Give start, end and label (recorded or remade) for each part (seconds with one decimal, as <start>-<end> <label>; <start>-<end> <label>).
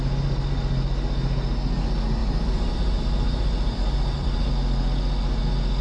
0.0-2.2 recorded; 2.2-4.5 remade; 4.5-5.8 recorded